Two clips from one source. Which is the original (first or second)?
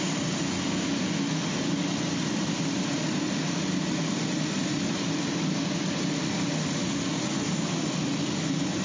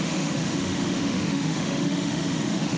first